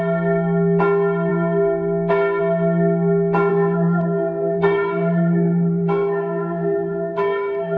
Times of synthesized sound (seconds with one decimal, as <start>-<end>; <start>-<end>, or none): 3.5-7.8